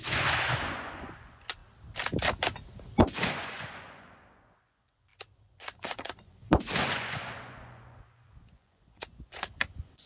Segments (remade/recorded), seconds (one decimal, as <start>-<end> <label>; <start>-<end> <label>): 0.0-1.6 remade; 1.6-2.8 recorded; 2.8-10.1 remade